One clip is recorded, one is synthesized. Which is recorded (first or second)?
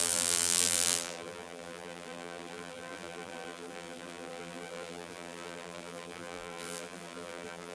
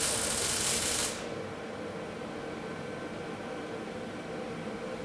second